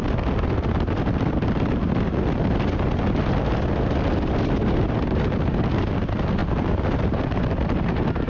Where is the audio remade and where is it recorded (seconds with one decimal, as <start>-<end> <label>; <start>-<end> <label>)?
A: 0.0-4.6 recorded; 4.6-5.8 remade; 5.8-6.4 recorded; 6.4-7.4 remade; 7.4-8.3 recorded